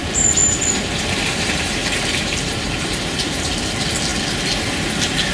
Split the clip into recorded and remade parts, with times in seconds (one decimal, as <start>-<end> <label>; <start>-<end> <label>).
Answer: 0.0-0.4 recorded; 0.4-3.6 remade; 3.6-5.3 recorded